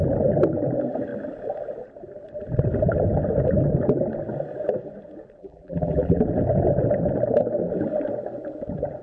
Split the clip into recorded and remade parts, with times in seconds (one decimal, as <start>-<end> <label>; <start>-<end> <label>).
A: 0.0-5.4 recorded; 5.4-6.2 remade; 6.2-9.0 recorded